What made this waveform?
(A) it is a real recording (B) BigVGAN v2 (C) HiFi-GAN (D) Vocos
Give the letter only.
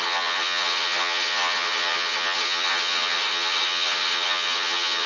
C